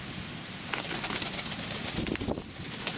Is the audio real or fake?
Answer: real